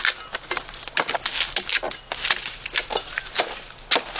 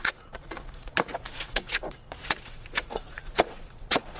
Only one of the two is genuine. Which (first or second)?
first